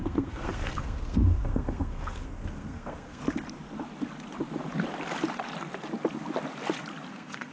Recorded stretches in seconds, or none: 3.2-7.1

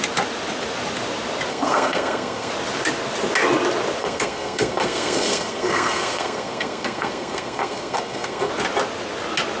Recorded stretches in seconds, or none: 0.0-1.5; 2.5-4.0; 8.5-9.6

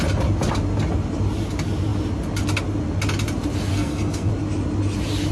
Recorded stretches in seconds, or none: 0.0-3.7; 4.3-5.3

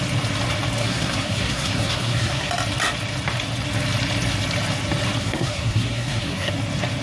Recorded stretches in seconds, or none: 0.0-0.8; 2.5-5.2; 6.5-7.0

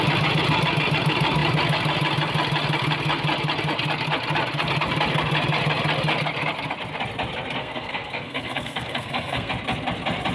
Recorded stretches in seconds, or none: 0.0-7.6; 9.5-10.3

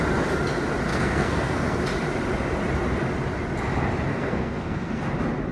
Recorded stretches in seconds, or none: 0.0-0.9; 1.8-4.1; 5.0-5.5